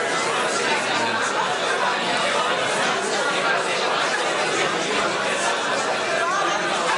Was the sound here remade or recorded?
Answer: recorded